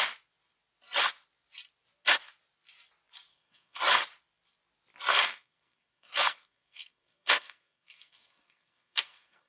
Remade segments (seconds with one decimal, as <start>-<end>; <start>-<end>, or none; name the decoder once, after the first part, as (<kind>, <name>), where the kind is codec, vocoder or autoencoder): 3.3-3.8 (codec, SNAC); 5.1-9.5

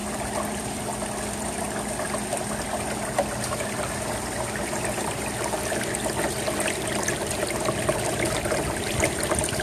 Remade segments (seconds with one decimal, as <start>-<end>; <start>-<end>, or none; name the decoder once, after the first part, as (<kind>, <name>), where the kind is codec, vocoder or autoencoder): none

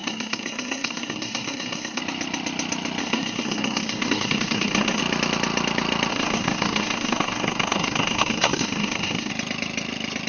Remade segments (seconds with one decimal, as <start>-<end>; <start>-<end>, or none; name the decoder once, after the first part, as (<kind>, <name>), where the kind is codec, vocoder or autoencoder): 0.0-2.0 (codec, SNAC); 3.0-5.0; 6.1-9.3

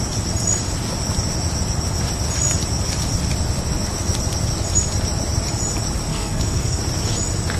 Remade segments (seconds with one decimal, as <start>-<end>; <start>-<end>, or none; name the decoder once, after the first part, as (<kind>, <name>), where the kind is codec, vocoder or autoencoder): 6.1-6.8 (codec, SNAC)